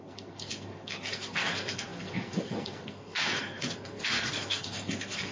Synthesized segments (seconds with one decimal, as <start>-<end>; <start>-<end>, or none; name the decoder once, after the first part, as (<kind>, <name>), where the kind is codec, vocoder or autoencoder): 0.0-5.3 (codec, SNAC)